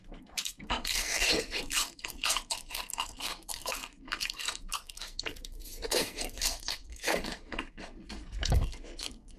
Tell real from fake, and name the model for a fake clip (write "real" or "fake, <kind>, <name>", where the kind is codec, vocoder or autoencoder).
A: fake, codec, SNAC